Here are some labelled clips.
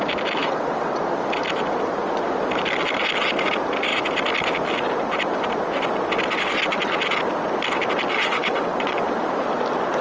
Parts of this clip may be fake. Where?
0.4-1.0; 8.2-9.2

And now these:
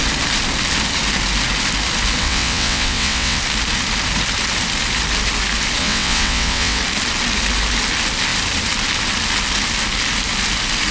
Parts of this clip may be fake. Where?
2.2-3.4; 5.8-6.8